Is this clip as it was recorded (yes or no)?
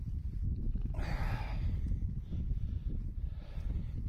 yes